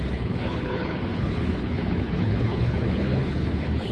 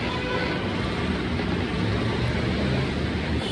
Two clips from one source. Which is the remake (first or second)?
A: first